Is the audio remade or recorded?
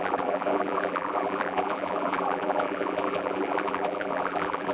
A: remade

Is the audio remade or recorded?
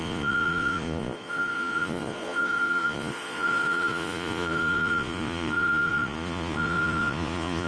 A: remade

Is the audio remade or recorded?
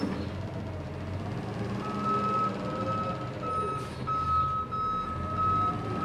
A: recorded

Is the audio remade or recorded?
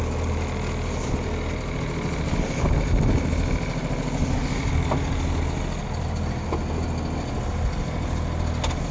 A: recorded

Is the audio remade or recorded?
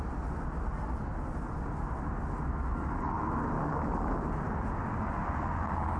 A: recorded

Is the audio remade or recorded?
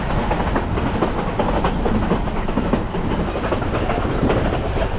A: recorded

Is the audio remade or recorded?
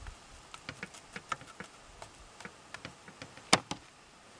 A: recorded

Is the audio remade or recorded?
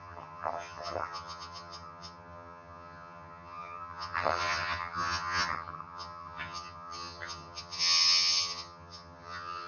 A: remade